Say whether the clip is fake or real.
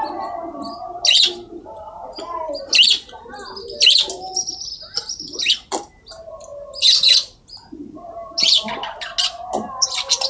real